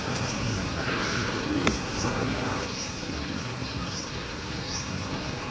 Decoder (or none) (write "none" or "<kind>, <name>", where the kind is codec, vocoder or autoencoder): codec, SNAC